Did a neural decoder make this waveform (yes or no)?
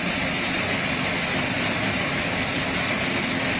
no